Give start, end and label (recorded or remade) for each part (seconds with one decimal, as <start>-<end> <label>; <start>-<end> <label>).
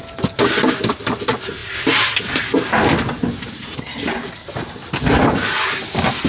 0.0-6.3 recorded